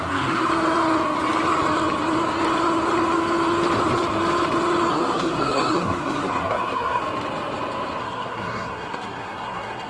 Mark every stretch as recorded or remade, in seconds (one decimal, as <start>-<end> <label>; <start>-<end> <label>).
0.0-0.5 remade; 0.5-4.9 recorded; 4.9-7.0 remade; 7.0-8.0 recorded; 8.0-9.9 remade